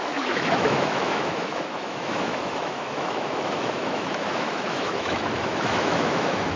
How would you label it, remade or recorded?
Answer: remade